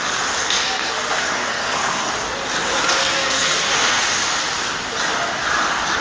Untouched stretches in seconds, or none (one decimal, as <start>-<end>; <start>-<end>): 0.0-0.4; 2.1-3.0; 4.0-6.0